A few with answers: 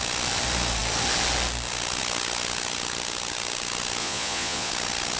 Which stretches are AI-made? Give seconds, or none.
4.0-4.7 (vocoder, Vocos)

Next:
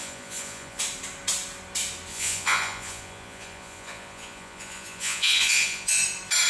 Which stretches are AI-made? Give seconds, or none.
0.0-0.8 (vocoder, Vocos); 2.1-6.0

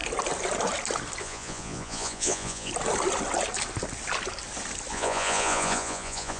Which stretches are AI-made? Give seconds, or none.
1.2-2.7 (vocoder, Vocos); 4.9-6.4

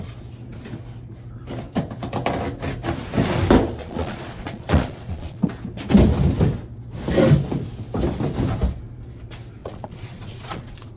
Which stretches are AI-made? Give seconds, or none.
3.8-5.5 (vocoder, Vocos); 9.6-11.0

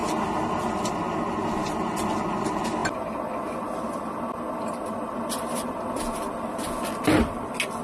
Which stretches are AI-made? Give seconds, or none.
none

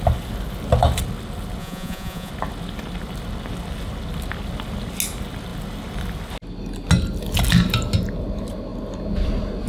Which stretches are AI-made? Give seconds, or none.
1.6-2.3 (vocoder, Vocos)